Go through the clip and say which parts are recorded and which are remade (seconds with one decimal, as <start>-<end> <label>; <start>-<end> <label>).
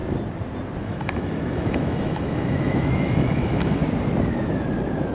0.0-0.8 recorded; 0.8-3.8 remade; 3.8-5.1 recorded